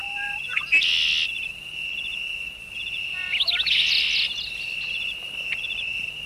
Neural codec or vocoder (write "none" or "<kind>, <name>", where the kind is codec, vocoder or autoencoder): none